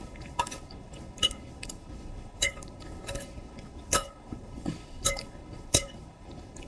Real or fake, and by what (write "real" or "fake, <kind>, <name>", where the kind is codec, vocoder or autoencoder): fake, codec, HILCodec